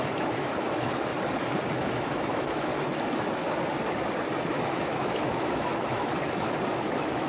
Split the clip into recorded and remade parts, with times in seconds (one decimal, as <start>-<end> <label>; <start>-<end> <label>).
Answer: 0.0-1.1 remade; 1.1-1.7 recorded; 1.7-2.7 remade; 2.7-4.5 recorded; 4.5-6.1 remade; 6.1-6.8 recorded; 6.8-7.3 remade